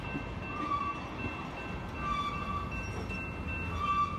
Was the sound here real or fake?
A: real